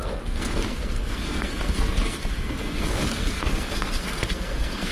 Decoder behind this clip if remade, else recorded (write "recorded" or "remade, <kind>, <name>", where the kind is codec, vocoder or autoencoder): remade, codec, SNAC